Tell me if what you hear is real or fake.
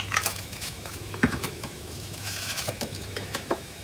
fake